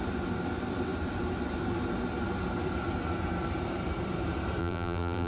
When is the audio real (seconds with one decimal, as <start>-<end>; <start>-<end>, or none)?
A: 0.0-4.6